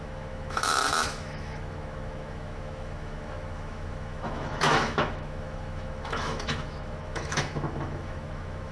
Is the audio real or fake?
fake